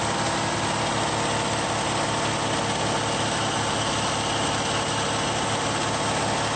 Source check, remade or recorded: recorded